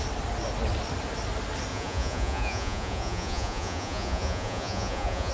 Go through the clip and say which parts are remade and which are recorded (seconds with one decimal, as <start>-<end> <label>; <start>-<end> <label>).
0.0-1.7 recorded; 1.7-5.3 remade